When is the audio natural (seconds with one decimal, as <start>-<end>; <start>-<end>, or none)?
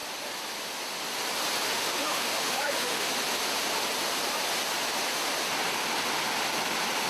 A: 0.0-1.7; 3.1-7.1